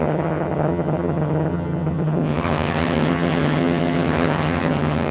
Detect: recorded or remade remade